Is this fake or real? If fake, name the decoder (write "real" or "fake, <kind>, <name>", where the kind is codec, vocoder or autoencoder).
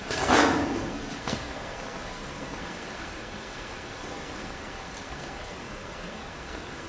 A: fake, codec, SNAC